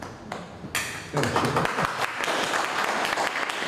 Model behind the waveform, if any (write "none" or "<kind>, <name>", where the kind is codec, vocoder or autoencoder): none